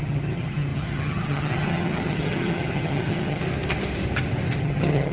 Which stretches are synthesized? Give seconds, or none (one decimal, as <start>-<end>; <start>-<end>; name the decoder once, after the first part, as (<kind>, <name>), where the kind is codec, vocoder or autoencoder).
0.0-3.4 (vocoder, HiFi-GAN); 4.6-5.1